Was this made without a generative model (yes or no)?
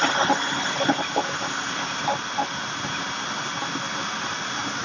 yes